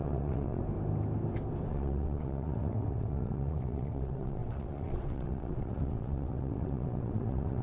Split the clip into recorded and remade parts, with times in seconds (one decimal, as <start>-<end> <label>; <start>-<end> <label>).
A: 0.0-0.6 remade; 0.6-1.7 recorded; 1.7-7.6 remade